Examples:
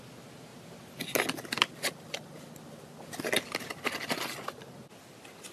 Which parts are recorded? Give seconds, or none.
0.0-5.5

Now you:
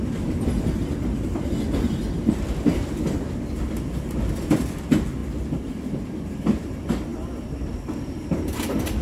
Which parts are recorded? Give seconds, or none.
0.0-9.0